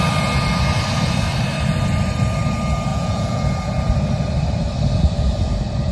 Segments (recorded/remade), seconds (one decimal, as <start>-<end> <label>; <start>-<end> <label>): 0.0-2.9 recorded; 2.9-3.4 remade; 3.4-5.9 recorded